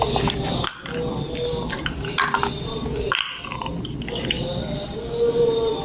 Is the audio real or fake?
real